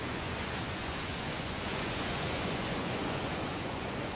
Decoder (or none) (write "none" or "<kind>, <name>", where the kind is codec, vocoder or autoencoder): vocoder, Vocos